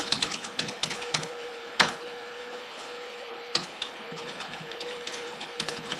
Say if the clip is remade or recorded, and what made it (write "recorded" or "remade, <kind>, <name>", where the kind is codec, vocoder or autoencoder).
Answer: remade, codec, HILCodec